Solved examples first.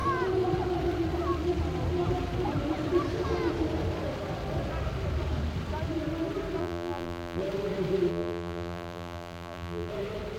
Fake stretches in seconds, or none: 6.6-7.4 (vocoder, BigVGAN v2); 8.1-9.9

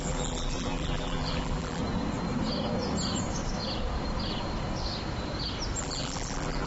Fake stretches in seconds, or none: 0.0-1.8 (vocoder, BigVGAN v2); 5.8-6.7

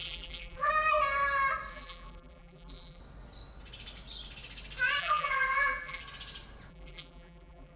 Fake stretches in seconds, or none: 0.0-0.7 (vocoder, BigVGAN v2); 1.7-3.0; 5.0-6.0; 6.7-7.8

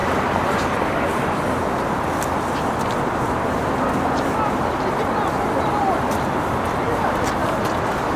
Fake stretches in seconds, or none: 7.4-8.2 (vocoder, BigVGAN v2)